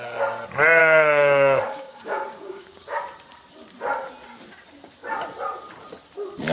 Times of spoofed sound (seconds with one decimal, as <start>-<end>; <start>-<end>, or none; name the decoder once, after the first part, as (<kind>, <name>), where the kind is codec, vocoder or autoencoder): 0.8-3.0 (codec, DAC)